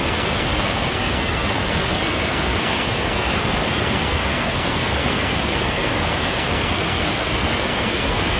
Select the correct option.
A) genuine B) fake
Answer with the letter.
B